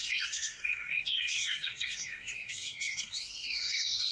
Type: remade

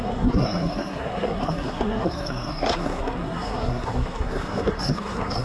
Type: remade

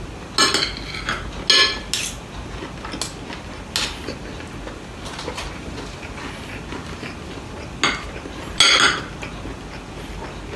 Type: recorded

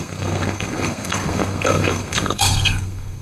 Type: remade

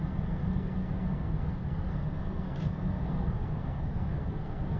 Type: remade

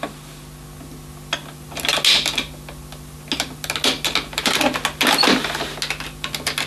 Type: recorded